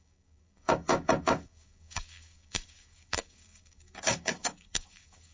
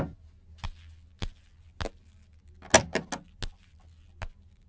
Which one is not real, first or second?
first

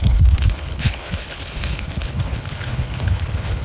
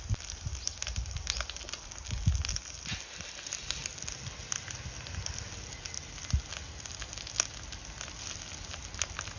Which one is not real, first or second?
first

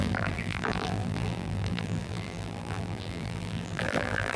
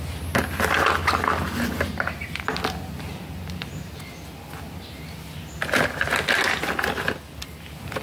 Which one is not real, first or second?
first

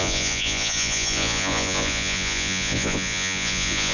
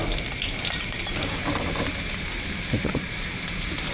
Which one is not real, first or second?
first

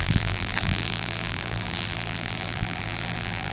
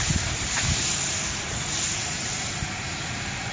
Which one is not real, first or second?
first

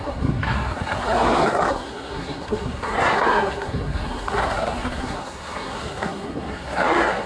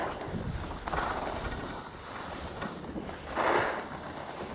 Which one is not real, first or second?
first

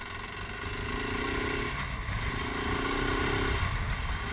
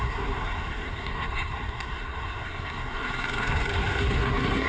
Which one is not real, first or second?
second